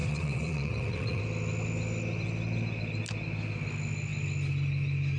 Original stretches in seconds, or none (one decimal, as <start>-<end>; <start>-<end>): 1.2-5.2